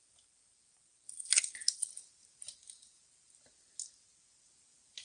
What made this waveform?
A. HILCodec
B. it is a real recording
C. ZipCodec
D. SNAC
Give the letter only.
B